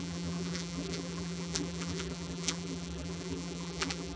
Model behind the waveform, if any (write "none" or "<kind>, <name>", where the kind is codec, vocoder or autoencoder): vocoder, BigVGAN v2